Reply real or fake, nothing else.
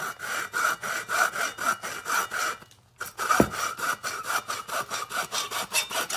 real